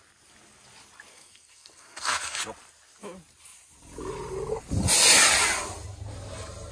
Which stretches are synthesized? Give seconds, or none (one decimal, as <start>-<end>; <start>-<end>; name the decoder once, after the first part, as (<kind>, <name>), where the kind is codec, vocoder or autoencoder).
1.1-2.4 (codec, SNAC)